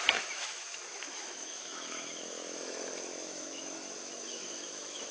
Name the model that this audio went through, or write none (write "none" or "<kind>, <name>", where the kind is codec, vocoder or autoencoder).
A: autoencoder, DAC-VAE